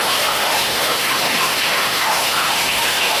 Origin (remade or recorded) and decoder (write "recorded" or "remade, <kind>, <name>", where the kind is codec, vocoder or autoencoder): remade, autoencoder, DAC-VAE